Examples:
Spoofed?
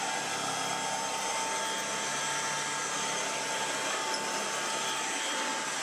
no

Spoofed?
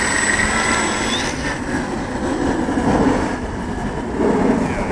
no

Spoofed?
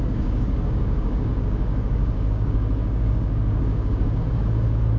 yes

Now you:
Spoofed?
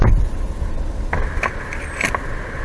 no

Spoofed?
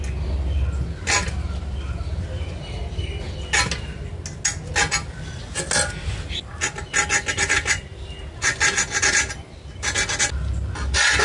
no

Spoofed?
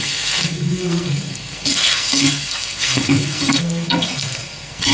yes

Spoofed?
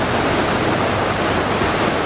no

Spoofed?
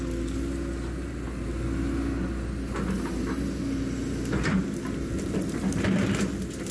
no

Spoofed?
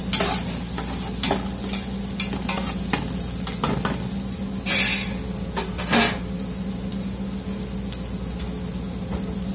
no